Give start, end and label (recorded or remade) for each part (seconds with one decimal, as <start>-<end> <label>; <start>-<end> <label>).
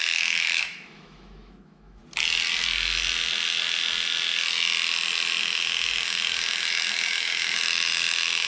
0.0-2.0 remade; 2.0-5.4 recorded; 5.4-8.5 remade